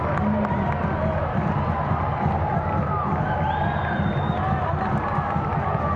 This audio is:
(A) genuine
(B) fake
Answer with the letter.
A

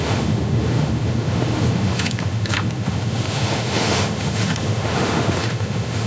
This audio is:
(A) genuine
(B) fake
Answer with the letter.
B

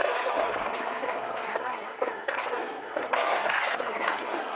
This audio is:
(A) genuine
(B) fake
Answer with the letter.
B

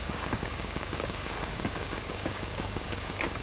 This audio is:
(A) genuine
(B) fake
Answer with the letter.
B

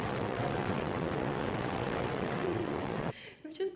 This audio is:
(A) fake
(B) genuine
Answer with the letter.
A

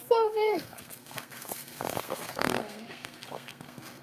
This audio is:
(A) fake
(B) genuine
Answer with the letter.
A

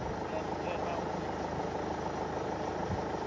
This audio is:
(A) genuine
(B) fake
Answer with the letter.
A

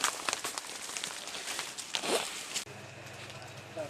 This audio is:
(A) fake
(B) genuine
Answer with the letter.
B